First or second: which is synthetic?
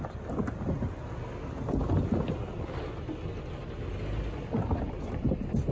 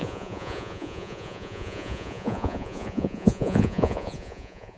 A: second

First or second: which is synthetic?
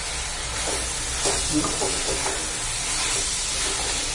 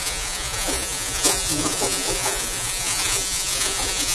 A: second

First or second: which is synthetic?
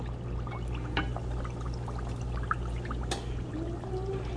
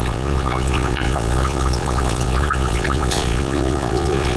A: second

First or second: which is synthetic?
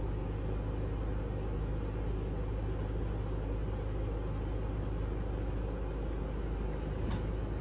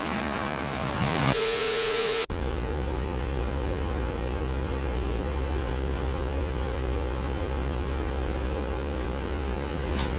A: second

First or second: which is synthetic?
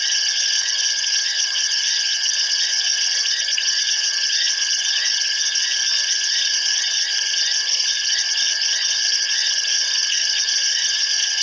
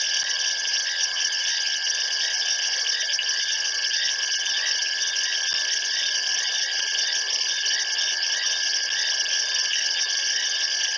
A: first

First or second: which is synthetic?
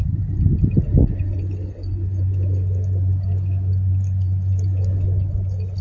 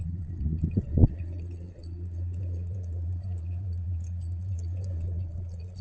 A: second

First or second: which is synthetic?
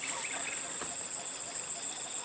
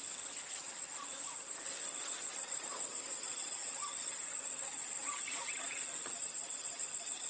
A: second